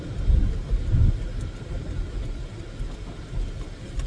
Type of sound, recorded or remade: recorded